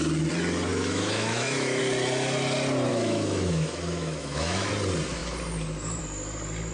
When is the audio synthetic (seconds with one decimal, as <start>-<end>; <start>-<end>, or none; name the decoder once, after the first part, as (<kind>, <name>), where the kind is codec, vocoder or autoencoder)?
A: 0.7-1.8 (autoencoder, DAC-VAE); 2.9-4.7